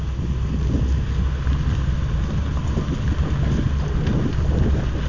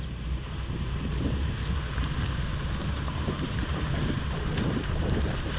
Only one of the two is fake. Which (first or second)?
second